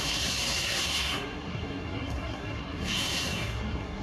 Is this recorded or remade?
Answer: remade